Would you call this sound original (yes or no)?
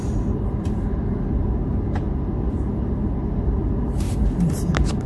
yes